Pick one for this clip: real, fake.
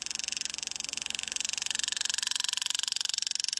real